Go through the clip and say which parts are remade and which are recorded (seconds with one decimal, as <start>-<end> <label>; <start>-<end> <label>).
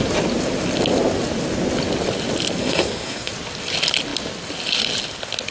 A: 0.0-2.6 recorded; 2.6-3.3 remade; 3.3-5.5 recorded